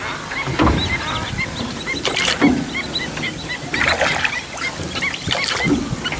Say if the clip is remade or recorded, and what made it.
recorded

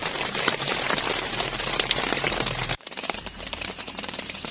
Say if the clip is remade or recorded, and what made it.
remade, vocoder, BigVGAN v2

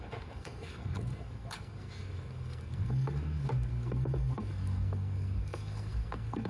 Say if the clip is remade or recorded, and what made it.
remade, codec, SNAC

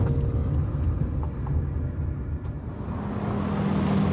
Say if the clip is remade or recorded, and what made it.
recorded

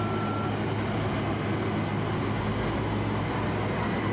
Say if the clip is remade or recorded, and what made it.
recorded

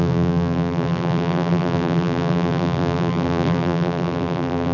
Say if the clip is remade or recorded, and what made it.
remade, vocoder, BigVGAN v2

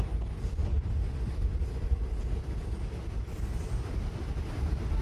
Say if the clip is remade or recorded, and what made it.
recorded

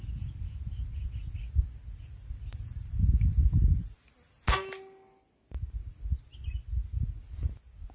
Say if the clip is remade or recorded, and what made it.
recorded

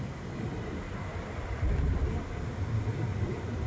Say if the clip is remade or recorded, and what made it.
recorded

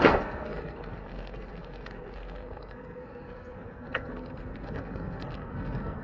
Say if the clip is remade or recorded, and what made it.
remade, codec, SNAC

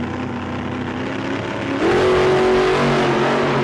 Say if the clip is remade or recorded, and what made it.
recorded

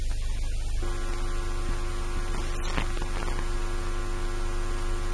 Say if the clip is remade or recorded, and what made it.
recorded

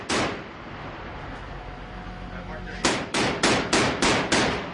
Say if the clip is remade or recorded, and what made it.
recorded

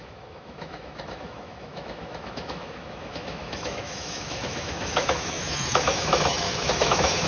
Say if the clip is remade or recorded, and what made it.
remade, autoencoder, DAC-VAE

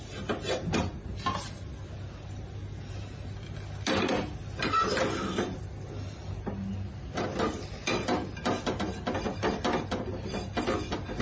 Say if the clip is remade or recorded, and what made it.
recorded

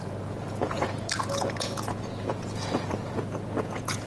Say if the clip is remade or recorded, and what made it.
remade, vocoder, Vocos